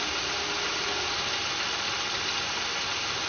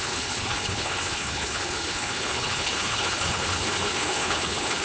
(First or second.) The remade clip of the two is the second